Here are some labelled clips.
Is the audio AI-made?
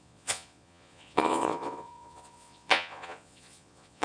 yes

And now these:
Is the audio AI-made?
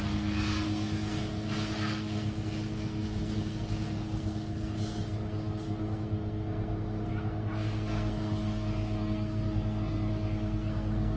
yes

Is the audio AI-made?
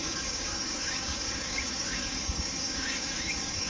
yes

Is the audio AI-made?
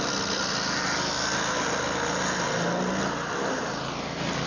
no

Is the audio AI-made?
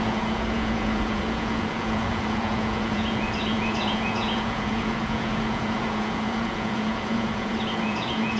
yes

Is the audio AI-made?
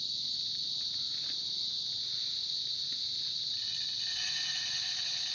no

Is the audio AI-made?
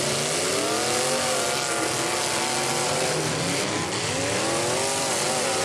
no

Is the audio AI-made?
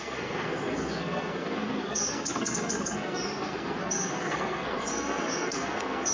yes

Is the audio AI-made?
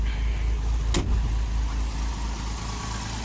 no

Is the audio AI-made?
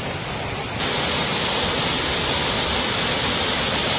no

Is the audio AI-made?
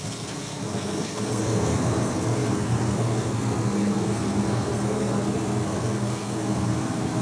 yes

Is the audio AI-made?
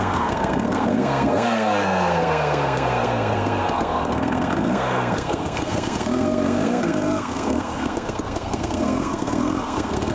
yes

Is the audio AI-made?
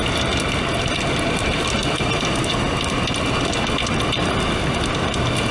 no